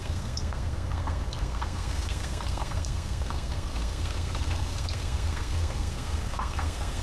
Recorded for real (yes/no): no